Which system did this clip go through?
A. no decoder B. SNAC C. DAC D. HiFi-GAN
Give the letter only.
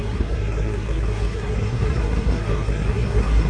B